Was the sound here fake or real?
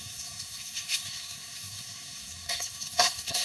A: fake